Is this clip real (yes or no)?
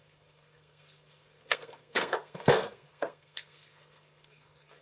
no